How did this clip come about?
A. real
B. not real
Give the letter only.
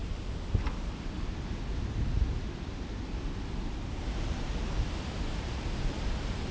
A